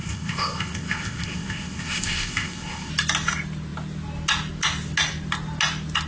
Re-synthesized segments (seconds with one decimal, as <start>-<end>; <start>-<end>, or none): 0.0-2.9